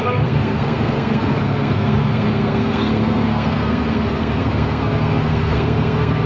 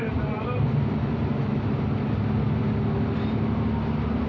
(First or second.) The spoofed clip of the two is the first